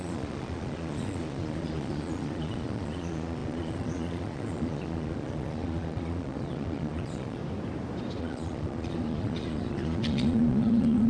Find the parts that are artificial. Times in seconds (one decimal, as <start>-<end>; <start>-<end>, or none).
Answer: 0.0-7.4; 8.2-11.1

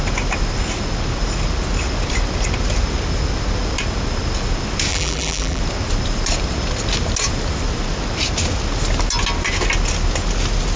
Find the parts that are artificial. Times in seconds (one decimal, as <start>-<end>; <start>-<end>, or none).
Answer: 4.9-5.6

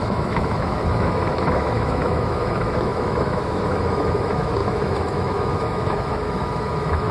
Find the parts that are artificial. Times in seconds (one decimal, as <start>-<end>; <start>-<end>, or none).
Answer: 0.0-7.1

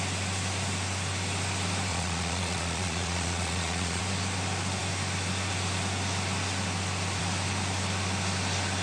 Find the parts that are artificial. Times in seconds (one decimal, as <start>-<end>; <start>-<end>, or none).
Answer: 1.9-4.0

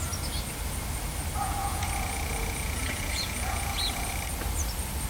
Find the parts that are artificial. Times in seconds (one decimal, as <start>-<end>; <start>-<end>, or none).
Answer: 1.4-4.1

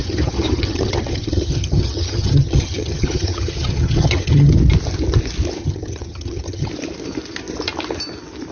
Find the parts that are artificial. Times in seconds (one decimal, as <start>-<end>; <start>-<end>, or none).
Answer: 0.0-4.5; 5.6-6.7

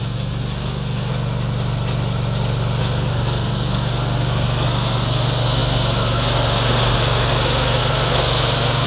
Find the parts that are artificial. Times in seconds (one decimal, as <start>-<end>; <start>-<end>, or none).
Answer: 0.0-1.1; 2.8-8.9